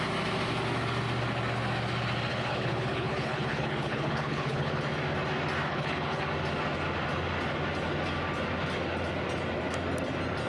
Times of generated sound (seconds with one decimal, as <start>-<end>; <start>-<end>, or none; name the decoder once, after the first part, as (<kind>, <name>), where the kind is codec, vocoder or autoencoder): 2.3-4.8 (codec, HILCodec); 5.7-6.2